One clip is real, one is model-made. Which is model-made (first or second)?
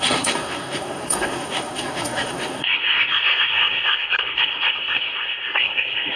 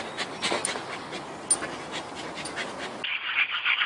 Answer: first